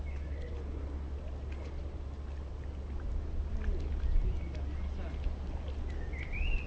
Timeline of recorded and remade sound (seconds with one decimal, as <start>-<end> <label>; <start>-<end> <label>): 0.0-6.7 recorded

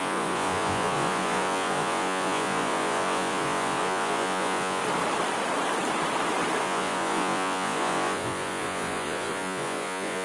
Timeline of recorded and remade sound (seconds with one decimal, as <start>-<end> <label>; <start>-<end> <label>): 0.0-4.8 remade; 4.8-6.6 recorded; 6.6-10.2 remade

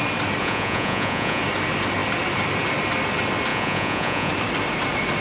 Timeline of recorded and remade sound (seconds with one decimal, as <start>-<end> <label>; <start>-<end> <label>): 0.0-0.4 recorded; 0.4-1.4 remade; 1.4-3.5 recorded; 3.5-4.3 remade; 4.3-5.2 recorded

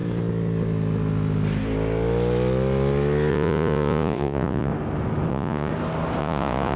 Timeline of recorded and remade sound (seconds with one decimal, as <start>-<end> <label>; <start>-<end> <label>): 0.0-3.3 recorded; 3.3-4.7 remade; 4.7-5.3 recorded; 5.3-5.7 remade; 5.7-6.2 recorded; 6.2-6.8 remade

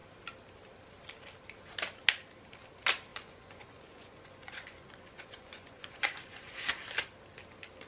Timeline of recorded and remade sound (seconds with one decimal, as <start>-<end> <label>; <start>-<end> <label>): 0.0-3.1 recorded; 3.1-6.7 remade; 6.7-7.9 recorded

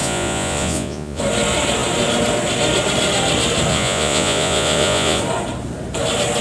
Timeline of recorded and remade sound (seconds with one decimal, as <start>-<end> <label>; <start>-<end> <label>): 0.0-1.2 remade; 1.2-3.7 recorded; 3.7-5.2 remade; 5.2-6.4 recorded

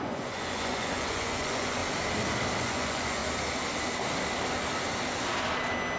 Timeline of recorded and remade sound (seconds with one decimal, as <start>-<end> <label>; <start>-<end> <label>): 0.0-1.8 remade; 1.8-2.6 recorded; 2.6-3.2 remade; 3.2-6.0 recorded